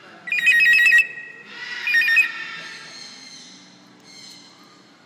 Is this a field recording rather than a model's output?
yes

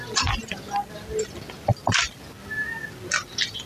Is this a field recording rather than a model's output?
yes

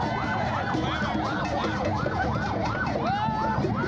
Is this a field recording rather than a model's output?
yes